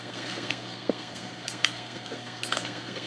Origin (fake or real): fake